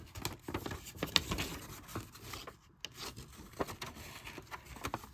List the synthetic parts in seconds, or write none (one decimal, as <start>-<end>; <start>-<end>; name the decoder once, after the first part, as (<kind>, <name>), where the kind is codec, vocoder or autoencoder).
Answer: none